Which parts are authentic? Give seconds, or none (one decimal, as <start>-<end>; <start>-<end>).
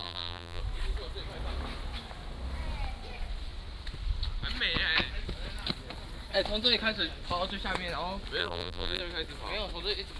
0.6-8.4; 9.0-10.2